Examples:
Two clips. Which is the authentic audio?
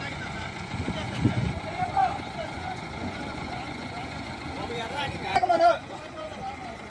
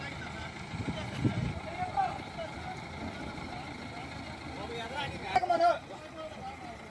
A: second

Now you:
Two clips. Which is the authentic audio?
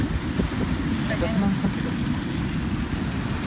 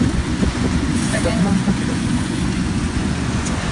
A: first